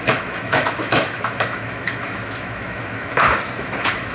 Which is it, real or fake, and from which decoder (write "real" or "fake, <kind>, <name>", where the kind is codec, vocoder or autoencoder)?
fake, autoencoder, DAC-VAE